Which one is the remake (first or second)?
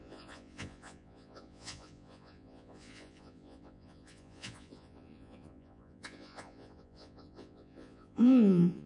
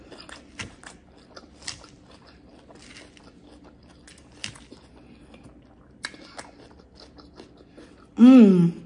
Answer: first